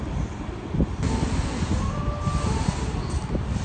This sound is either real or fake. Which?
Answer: real